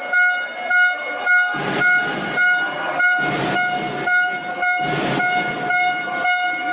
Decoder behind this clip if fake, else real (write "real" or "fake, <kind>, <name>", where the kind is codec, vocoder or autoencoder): real